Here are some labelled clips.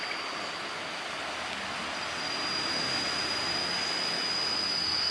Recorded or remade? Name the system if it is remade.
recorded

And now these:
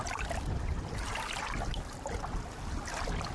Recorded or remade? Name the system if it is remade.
recorded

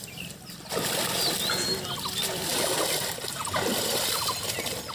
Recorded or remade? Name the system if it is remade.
recorded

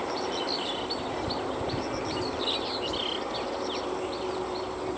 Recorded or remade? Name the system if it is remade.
recorded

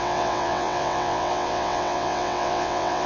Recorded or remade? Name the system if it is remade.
remade, vocoder, WaveNeXt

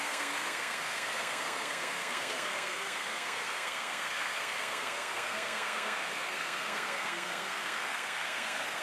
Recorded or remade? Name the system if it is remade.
remade, codec, SNAC